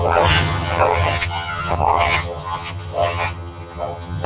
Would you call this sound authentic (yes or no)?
no